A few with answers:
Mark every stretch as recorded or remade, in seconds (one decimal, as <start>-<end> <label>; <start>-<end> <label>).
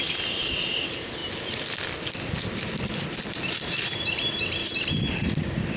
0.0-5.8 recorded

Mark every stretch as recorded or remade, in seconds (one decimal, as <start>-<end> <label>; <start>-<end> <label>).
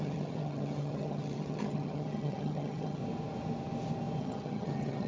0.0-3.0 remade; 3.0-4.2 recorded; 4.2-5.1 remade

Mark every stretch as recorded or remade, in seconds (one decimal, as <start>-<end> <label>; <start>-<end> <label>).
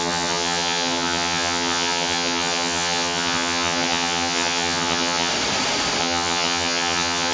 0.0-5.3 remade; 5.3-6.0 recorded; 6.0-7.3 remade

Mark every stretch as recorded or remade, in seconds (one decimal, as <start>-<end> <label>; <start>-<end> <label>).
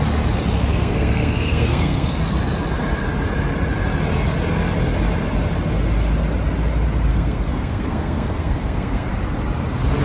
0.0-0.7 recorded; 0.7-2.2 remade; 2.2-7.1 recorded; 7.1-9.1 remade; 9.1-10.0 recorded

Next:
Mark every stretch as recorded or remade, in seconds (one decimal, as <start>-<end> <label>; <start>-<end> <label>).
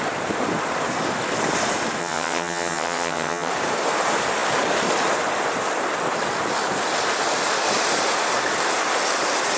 0.0-2.0 recorded; 2.0-3.5 remade; 3.5-9.6 recorded